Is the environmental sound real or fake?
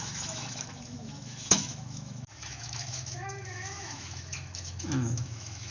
fake